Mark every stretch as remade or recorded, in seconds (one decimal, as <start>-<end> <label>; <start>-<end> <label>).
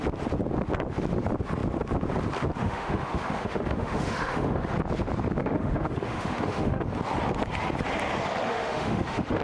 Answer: 0.0-2.6 recorded; 2.6-4.7 remade; 4.7-5.4 recorded; 5.4-6.8 remade; 6.8-8.5 recorded; 8.5-9.4 remade